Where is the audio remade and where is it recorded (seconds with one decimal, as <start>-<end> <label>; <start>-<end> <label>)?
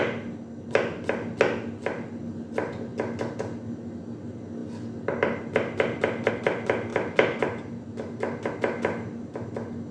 0.0-9.9 recorded